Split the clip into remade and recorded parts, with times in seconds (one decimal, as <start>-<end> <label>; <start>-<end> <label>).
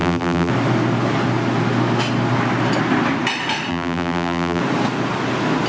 0.0-0.5 remade; 0.5-3.7 recorded; 3.7-4.6 remade; 4.6-5.7 recorded